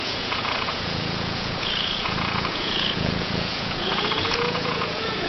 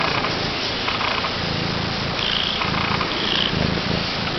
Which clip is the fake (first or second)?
first